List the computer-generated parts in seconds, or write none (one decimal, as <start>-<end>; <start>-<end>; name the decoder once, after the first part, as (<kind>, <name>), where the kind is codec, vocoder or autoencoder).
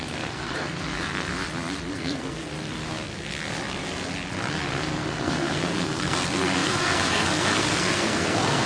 0.0-1.3 (codec, SNAC); 1.9-2.5; 4.7-8.7